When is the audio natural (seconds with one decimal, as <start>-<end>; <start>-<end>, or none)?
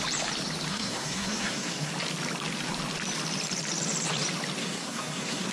0.0-0.7; 1.9-4.6